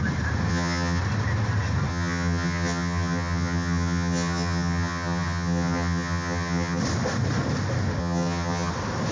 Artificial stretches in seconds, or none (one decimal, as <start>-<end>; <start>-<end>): 0.5-1.0; 1.9-6.8; 8.0-8.7